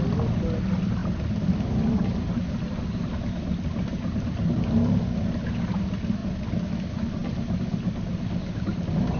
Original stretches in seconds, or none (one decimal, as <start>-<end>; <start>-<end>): 0.0-9.2